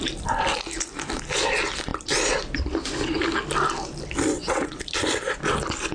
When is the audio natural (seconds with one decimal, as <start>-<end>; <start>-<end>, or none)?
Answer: 0.0-4.3; 4.8-5.9